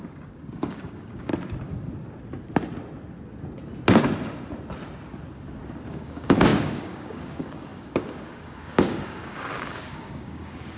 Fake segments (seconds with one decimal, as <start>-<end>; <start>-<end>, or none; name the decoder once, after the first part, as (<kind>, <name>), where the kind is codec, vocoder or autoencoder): 0.0-1.3 (codec, DAC); 5.9-10.8